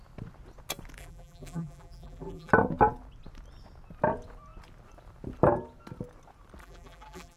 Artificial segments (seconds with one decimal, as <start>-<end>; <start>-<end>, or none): 1.0-2.5; 6.6-7.4